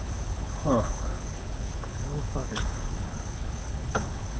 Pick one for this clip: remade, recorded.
remade